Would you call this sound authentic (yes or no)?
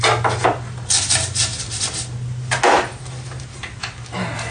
yes